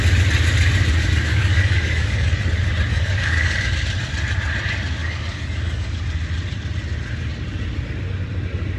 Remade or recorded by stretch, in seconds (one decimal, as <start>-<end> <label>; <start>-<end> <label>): 0.0-1.3 recorded; 1.3-2.4 remade; 2.4-2.9 recorded; 2.9-3.7 remade; 3.7-5.0 recorded; 5.0-6.0 remade; 6.0-8.8 recorded